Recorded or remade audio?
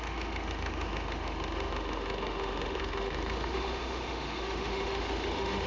remade